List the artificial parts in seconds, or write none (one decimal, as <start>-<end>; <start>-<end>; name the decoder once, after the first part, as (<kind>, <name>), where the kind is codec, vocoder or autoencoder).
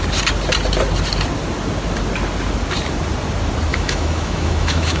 3.7-5.0 (autoencoder, DAC-VAE)